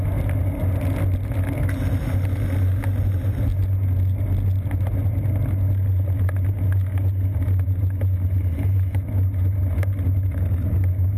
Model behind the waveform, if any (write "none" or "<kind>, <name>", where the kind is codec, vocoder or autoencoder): none